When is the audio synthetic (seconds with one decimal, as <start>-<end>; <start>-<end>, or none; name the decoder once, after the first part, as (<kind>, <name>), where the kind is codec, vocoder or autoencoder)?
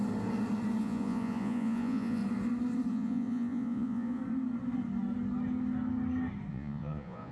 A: 0.8-2.2 (vocoder, Vocos); 2.9-4.2; 6.5-7.3